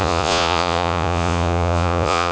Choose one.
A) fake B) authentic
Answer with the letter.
A